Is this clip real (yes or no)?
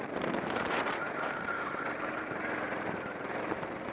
no